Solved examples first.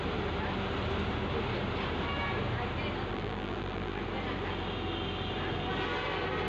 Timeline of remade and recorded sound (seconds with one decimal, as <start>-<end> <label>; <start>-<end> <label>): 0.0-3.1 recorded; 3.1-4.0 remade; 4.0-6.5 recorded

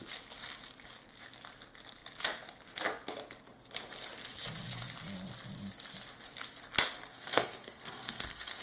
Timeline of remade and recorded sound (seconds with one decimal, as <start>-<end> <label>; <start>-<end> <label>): 0.0-7.1 recorded; 7.1-8.6 remade

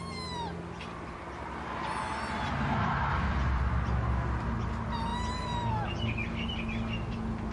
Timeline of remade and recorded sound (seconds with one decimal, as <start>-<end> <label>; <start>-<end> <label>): 0.0-7.5 recorded

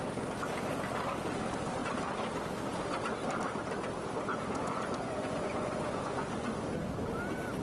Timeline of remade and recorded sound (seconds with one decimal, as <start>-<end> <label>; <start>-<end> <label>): 0.0-4.3 recorded; 4.3-6.6 remade; 6.6-7.6 recorded